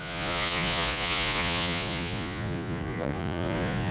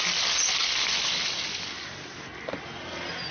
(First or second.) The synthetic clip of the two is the first